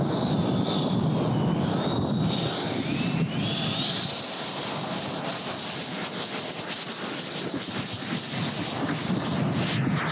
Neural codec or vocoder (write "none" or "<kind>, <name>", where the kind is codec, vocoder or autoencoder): none